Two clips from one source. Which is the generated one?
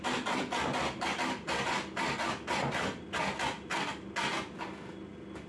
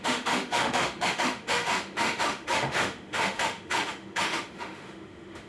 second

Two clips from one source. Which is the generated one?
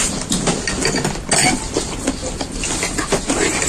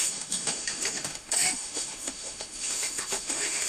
second